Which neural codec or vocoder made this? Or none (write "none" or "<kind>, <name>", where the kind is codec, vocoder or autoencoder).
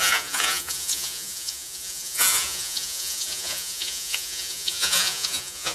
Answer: vocoder, Vocos